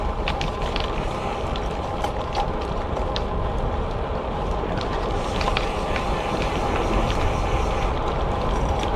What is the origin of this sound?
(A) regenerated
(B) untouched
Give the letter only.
A